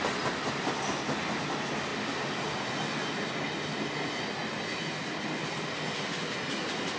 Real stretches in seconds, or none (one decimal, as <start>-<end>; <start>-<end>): 0.0-7.0